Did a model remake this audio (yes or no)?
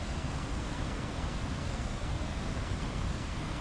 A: yes